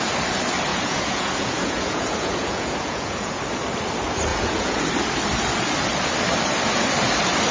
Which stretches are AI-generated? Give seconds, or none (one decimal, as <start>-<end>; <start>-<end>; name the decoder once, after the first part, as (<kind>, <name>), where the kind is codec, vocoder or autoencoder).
0.7-3.4 (vocoder, Vocos); 4.3-4.8